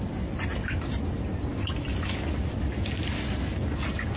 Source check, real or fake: real